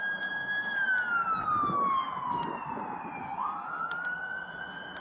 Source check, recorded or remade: recorded